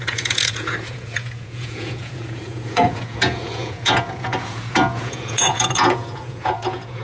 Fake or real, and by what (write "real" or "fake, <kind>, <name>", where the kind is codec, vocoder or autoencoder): fake, vocoder, Vocos